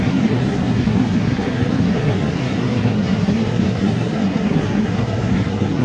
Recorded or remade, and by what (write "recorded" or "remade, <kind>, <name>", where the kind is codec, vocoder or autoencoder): remade, codec, SNAC